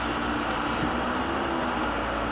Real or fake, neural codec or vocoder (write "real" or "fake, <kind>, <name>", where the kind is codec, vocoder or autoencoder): real